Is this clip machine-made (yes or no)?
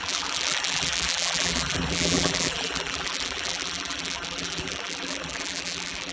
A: yes